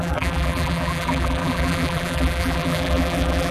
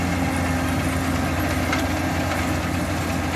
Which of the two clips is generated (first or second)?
first